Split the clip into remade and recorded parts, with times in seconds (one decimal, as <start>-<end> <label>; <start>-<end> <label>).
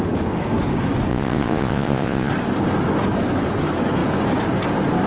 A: 0.0-1.1 recorded; 1.1-2.3 remade; 2.3-5.1 recorded